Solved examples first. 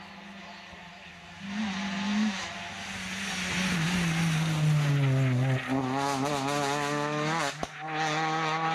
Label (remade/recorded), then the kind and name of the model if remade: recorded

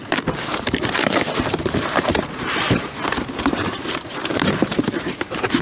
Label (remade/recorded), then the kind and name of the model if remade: remade, vocoder, BigVGAN v2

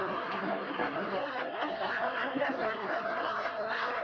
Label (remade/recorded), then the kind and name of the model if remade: remade, codec, SNAC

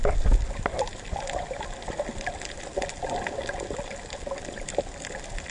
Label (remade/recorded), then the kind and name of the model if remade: recorded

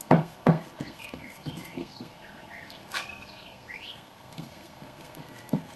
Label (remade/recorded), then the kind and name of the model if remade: remade, codec, SNAC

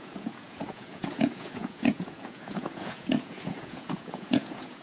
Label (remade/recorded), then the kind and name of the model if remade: remade, vocoder, Vocos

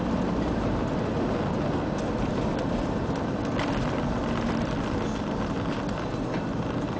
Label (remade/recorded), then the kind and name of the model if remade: recorded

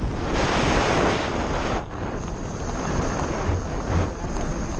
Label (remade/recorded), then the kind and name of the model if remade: remade, vocoder, BigVGAN v2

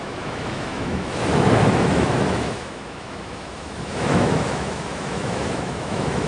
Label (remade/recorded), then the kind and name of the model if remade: remade, autoencoder, DAC-VAE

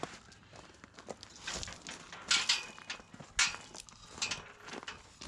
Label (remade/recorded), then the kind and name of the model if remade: recorded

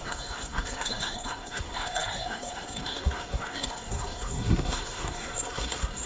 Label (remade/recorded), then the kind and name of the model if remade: remade, codec, SNAC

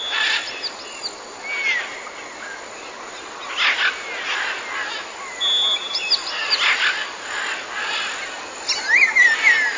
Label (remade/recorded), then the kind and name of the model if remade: recorded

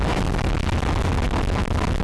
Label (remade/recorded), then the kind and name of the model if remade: recorded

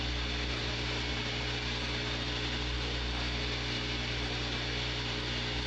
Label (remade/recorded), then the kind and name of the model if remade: recorded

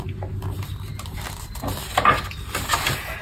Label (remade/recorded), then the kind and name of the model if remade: recorded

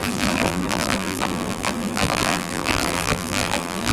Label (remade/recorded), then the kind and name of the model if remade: remade, vocoder, BigVGAN v2